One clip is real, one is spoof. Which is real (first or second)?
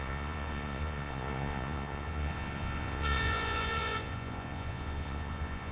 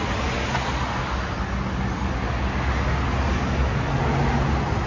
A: second